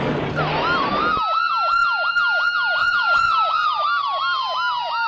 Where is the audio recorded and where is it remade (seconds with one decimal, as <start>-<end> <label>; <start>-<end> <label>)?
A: 0.0-2.8 recorded; 2.8-3.8 remade; 3.8-5.1 recorded